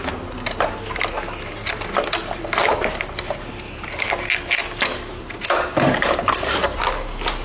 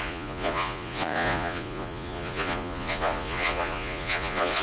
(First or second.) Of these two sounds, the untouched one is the first